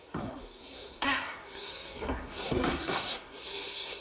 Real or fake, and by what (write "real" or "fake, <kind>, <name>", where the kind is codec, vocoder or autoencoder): fake, codec, SNAC